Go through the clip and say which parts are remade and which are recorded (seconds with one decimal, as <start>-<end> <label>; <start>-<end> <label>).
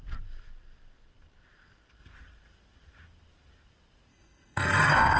0.0-4.1 recorded; 4.1-5.2 remade